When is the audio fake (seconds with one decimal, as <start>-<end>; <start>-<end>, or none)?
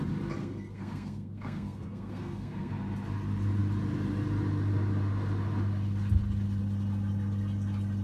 0.4-2.7